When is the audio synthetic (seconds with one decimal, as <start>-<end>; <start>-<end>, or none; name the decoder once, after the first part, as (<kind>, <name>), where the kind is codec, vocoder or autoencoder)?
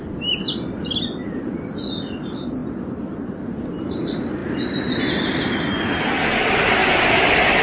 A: none